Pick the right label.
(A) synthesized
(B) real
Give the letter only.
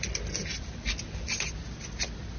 B